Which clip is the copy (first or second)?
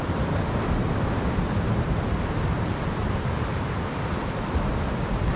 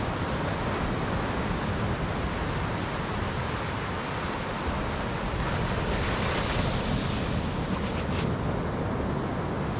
first